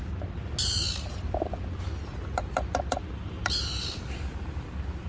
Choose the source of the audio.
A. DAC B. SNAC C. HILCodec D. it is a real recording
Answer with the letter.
D